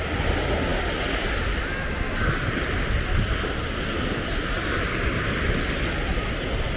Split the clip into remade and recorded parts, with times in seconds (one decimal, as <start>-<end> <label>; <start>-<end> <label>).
0.0-6.8 recorded